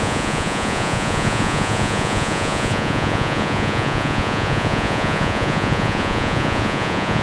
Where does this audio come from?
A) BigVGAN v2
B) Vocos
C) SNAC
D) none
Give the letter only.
B